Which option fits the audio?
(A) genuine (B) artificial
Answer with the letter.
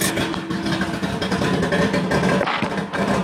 A